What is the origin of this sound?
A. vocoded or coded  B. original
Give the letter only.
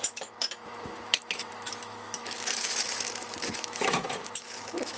A